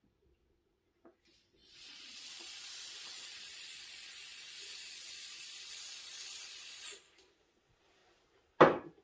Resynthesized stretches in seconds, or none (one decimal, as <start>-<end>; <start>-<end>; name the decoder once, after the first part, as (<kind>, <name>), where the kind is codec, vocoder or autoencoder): 0.0-8.0 (vocoder, Vocos)